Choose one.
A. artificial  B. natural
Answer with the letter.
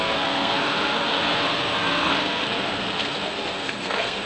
A